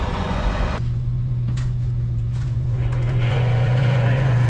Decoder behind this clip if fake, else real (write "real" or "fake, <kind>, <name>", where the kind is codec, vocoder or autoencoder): fake, vocoder, Vocos